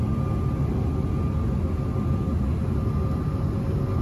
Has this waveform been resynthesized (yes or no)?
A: no